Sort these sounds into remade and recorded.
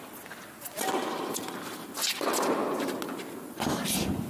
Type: recorded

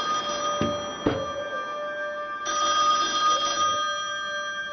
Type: recorded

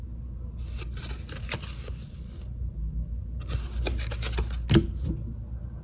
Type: recorded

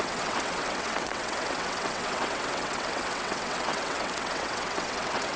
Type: remade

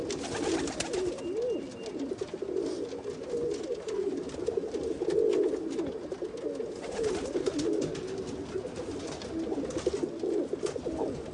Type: recorded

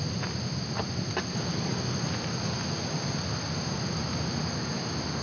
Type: recorded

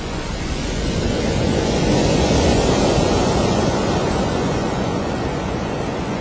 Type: remade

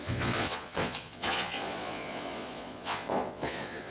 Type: remade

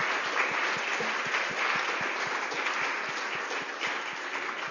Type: recorded